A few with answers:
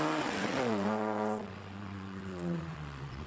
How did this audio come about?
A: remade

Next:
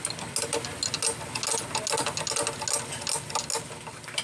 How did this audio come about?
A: recorded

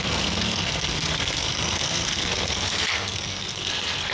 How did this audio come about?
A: remade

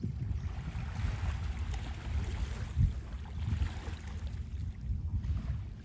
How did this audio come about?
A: recorded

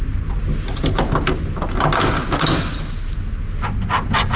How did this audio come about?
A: recorded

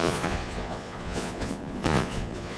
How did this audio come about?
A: remade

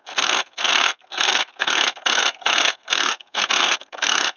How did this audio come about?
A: remade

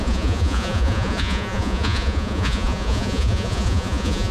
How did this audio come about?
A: remade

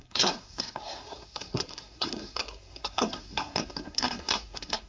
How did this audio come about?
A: remade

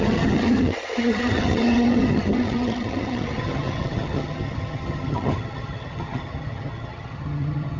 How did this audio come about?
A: remade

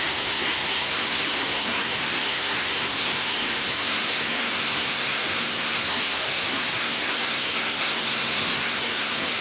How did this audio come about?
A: remade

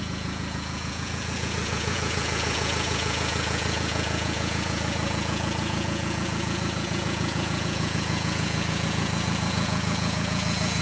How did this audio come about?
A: remade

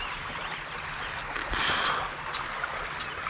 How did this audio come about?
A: recorded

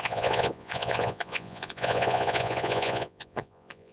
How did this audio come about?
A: remade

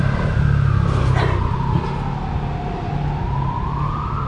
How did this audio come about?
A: recorded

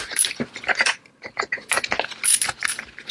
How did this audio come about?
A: recorded